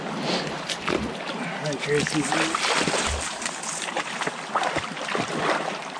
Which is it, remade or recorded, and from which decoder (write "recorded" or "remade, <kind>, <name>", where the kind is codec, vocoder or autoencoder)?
recorded